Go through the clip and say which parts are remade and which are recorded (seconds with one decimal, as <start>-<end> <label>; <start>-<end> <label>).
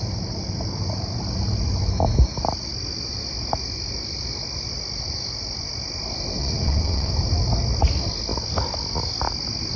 0.0-6.4 recorded; 6.4-7.1 remade; 7.1-9.8 recorded